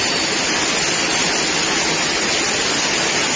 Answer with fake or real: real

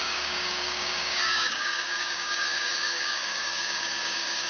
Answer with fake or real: fake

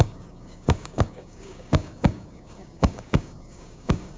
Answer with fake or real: fake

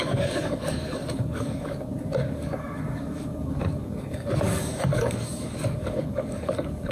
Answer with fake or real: fake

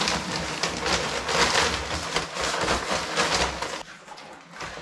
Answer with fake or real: real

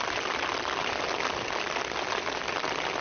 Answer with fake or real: real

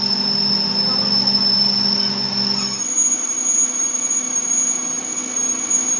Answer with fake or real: real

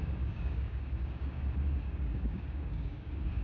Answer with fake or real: fake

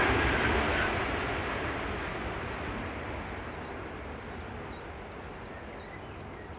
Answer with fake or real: real